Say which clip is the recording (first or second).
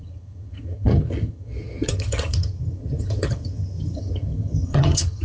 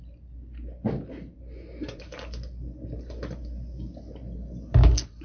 second